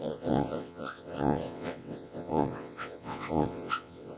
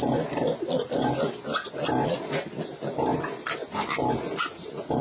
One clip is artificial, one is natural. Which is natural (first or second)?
second